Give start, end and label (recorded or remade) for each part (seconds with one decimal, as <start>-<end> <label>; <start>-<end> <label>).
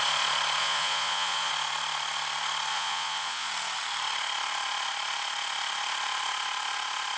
0.0-0.6 recorded; 0.6-1.5 remade; 1.5-2.7 recorded; 2.7-3.5 remade; 3.5-7.2 recorded